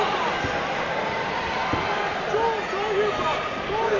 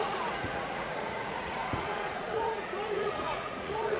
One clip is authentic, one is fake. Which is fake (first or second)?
second